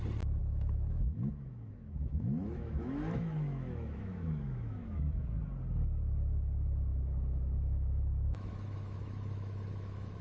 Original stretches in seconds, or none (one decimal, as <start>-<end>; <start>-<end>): 0.0-0.4; 5.4-6.9